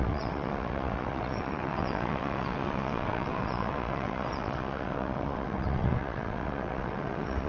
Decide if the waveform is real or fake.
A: fake